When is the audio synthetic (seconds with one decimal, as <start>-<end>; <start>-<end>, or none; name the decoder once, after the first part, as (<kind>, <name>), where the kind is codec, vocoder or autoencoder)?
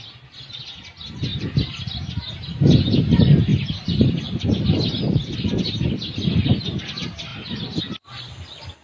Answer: 1.3-2.9 (vocoder, BigVGAN v2)